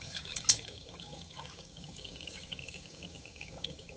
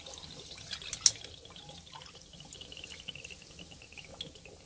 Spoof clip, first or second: first